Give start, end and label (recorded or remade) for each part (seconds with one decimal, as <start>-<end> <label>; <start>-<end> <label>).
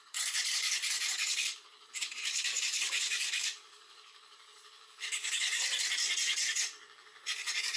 0.0-5.6 remade; 5.6-6.5 recorded; 6.5-7.8 remade